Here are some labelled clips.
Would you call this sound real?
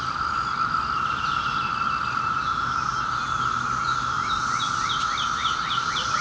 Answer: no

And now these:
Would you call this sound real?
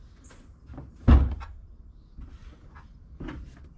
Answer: yes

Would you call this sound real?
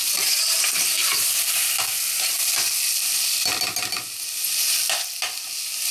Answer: yes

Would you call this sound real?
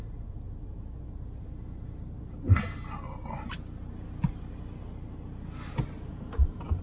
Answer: yes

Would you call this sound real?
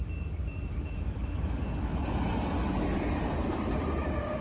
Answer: no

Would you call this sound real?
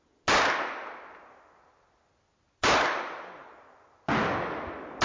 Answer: yes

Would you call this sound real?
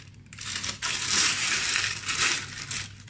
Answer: no